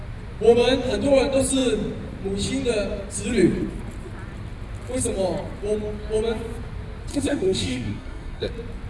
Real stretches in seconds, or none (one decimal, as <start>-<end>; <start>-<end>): 0.0-7.1; 8.5-8.9